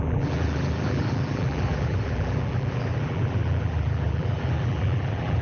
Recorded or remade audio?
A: remade